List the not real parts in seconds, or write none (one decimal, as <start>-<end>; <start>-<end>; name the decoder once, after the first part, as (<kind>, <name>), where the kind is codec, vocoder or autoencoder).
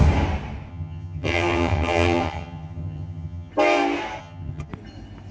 0.7-3.5 (vocoder, HiFi-GAN); 4.2-4.7